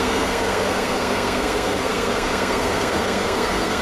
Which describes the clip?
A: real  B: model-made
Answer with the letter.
B